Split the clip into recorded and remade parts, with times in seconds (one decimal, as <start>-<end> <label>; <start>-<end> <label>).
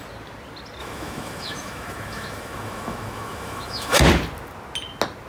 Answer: 0.0-0.8 recorded; 0.8-4.0 remade; 4.0-5.3 recorded